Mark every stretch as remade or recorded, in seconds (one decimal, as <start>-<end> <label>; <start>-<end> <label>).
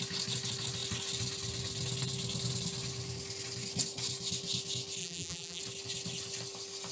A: 0.0-5.0 recorded; 5.0-5.6 remade; 5.6-6.9 recorded